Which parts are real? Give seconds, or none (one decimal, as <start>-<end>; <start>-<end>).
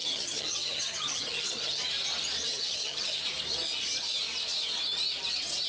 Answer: 1.8-2.5; 3.2-5.7